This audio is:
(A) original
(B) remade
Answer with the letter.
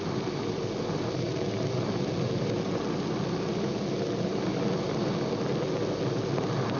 A